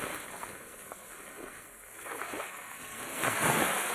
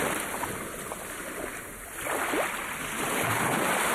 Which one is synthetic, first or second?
first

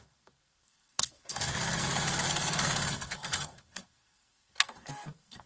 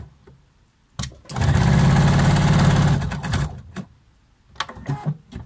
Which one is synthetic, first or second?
first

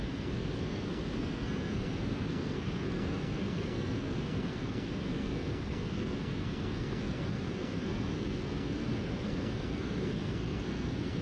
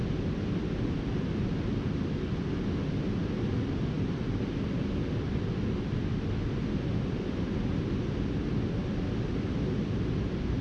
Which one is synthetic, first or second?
first